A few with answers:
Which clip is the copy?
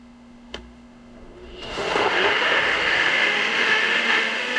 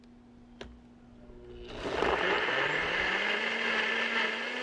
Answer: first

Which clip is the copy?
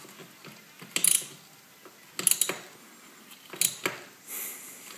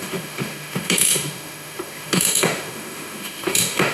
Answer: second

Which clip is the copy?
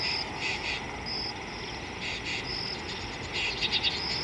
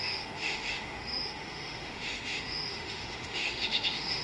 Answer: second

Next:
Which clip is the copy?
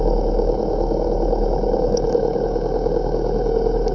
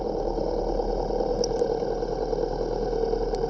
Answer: first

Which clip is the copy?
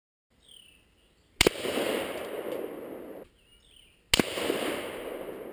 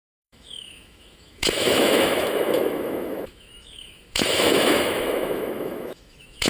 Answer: second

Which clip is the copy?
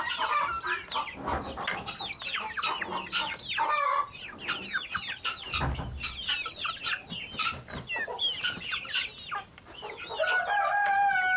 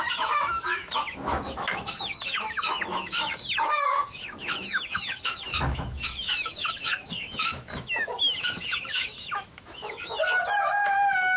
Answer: second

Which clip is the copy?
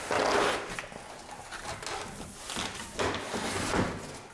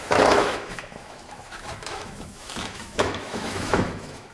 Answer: second